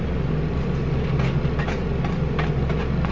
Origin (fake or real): real